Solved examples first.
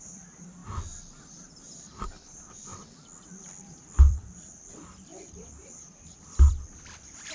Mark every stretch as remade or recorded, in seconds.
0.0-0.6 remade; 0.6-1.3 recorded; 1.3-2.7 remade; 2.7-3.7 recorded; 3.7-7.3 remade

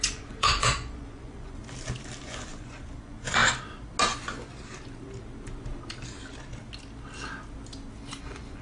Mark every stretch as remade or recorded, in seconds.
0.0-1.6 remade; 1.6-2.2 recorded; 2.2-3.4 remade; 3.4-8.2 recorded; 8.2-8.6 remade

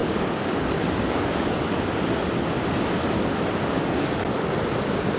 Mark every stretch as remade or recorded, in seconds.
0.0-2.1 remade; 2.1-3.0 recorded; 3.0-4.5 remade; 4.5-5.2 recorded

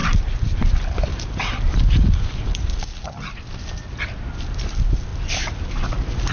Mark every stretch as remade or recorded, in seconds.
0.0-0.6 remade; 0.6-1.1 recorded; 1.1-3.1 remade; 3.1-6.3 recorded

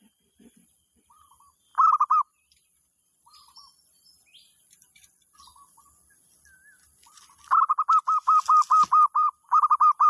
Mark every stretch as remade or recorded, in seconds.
0.0-1.7 remade; 1.7-2.3 recorded; 2.3-7.7 remade; 7.7-8.9 recorded; 8.9-10.1 remade

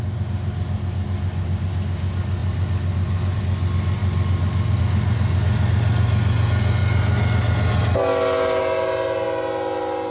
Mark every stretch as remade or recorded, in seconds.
0.0-10.1 recorded

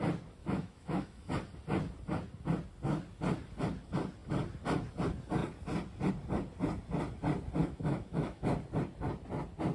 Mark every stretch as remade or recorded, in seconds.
0.0-0.4 recorded; 0.4-1.3 remade; 1.3-7.6 recorded; 7.6-8.5 remade; 8.5-9.7 recorded